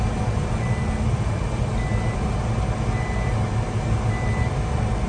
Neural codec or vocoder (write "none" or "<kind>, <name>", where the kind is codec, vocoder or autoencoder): none